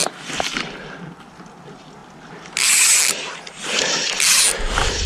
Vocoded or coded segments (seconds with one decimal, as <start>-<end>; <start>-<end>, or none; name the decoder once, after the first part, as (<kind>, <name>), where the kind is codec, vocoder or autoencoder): none